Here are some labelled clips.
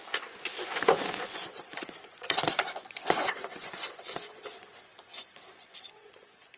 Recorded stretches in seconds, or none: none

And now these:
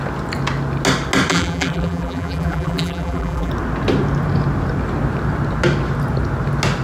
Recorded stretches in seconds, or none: 0.0-1.3; 3.5-6.8

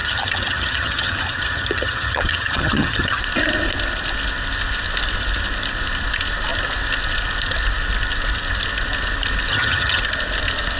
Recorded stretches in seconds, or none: 3.2-9.5; 10.0-10.8

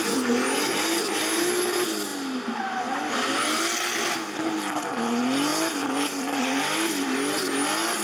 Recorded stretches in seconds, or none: 0.0-5.5; 6.4-8.0

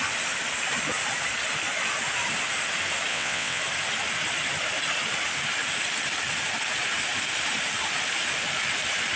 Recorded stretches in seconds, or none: 0.0-3.1; 3.6-9.2

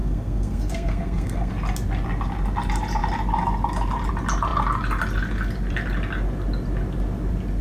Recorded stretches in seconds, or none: 1.5-7.6

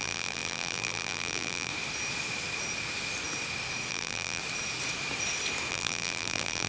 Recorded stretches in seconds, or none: 1.7-3.9; 4.4-5.7